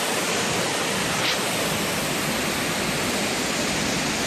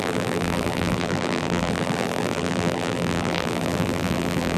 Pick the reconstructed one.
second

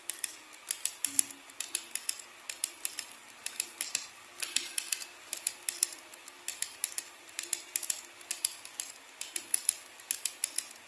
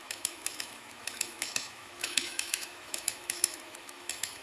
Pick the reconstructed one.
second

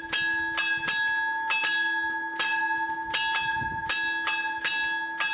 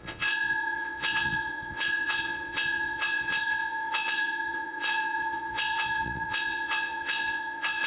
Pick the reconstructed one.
second